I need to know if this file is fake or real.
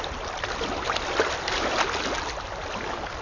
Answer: real